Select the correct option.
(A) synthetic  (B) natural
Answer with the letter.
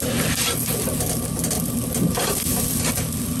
B